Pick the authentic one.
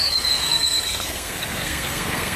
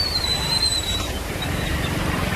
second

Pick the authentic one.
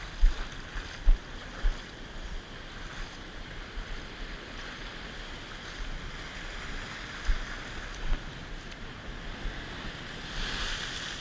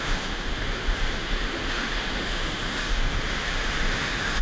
first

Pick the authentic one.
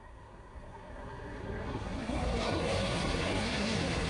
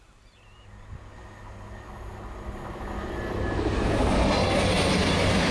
second